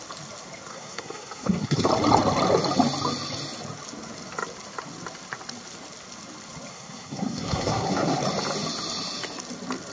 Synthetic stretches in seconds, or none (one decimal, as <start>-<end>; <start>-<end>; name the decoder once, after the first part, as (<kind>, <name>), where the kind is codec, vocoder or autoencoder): 0.7-1.9 (codec, SNAC); 6.7-8.2